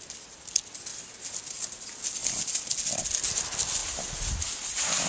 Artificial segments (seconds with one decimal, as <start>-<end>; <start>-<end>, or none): 0.9-1.4; 3.8-5.1